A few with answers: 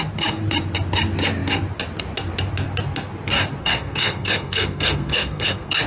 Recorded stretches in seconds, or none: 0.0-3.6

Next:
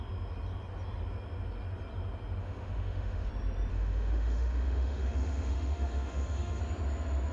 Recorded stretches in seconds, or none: 0.0-2.4; 3.3-3.7; 6.6-7.3